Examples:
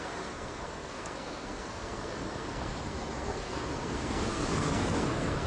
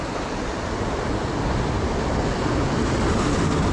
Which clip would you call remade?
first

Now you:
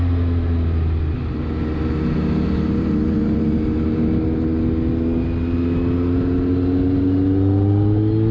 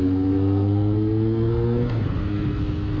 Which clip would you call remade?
second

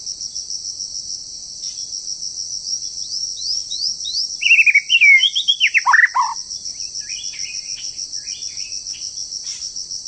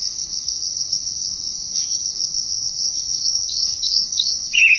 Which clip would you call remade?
second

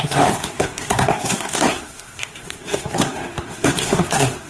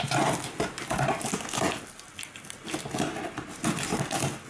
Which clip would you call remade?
first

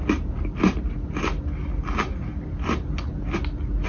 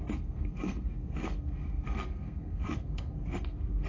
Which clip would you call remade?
second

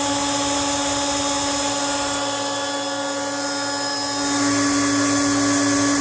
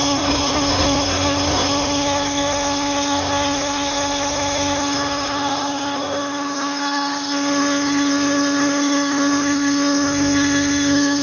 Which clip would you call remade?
second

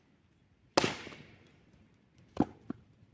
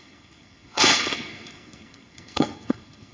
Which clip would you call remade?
second